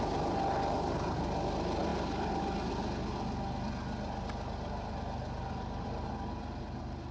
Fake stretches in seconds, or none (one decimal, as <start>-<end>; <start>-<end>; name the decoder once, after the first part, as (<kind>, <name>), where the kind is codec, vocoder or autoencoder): none